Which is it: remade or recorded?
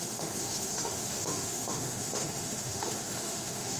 remade